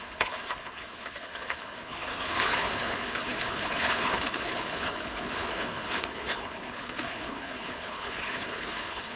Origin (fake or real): fake